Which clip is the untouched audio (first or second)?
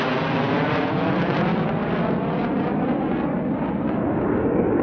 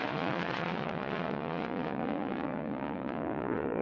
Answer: first